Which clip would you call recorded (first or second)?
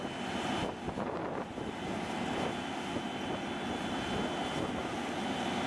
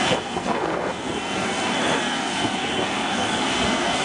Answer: first